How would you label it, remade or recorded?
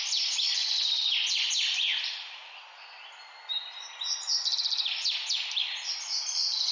recorded